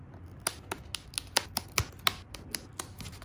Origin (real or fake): real